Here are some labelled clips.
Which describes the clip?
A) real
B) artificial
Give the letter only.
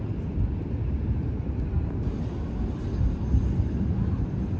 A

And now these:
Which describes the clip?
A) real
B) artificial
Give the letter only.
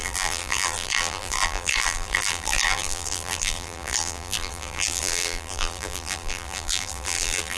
B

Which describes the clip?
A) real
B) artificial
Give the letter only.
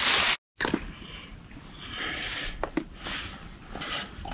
A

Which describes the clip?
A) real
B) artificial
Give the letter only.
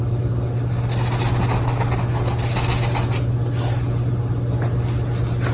A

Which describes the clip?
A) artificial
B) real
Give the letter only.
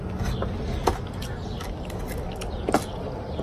B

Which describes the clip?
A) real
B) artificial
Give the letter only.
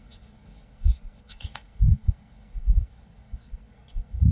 B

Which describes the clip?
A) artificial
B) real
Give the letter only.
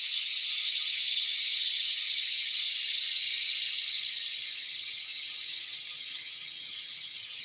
A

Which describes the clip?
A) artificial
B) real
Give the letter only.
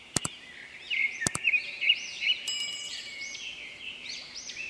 A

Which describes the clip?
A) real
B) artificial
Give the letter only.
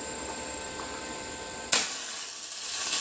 A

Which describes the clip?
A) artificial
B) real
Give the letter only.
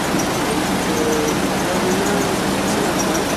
B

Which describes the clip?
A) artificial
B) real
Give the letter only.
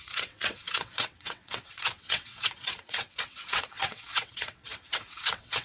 A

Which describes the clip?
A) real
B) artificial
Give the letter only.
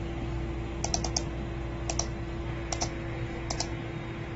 A